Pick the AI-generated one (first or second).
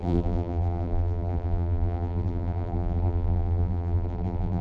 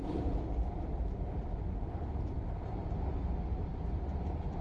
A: first